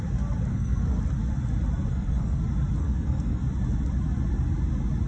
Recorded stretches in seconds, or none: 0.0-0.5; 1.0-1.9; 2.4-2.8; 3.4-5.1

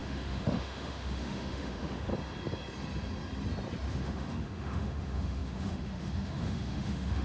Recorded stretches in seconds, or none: 2.1-3.9

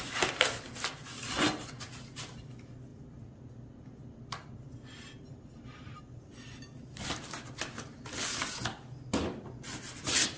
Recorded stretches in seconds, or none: 0.0-10.4

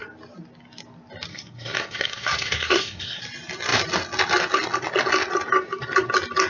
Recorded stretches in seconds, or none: 0.0-1.3; 3.2-6.5

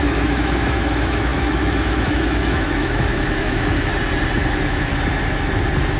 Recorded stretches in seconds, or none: 3.9-4.5; 4.9-6.0

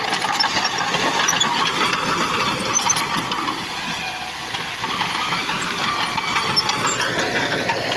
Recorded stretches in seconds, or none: 0.0-8.0

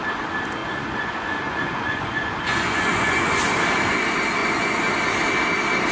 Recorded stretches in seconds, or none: 0.0-0.6; 3.4-4.4; 4.9-5.9